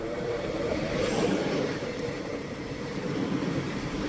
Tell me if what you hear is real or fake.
fake